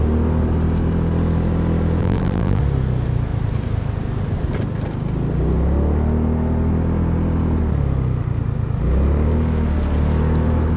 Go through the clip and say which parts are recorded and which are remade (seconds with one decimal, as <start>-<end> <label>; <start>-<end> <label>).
0.0-2.0 recorded; 2.0-2.6 remade; 2.6-10.8 recorded